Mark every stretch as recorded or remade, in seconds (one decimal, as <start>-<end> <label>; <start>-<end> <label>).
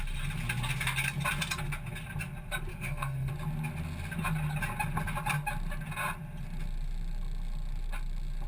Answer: 0.0-2.7 recorded; 2.7-3.3 remade; 3.3-8.5 recorded